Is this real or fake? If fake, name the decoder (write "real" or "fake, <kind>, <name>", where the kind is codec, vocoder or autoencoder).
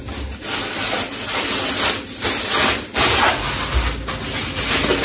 real